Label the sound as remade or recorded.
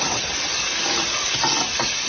recorded